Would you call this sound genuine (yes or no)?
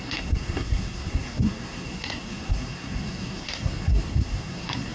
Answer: no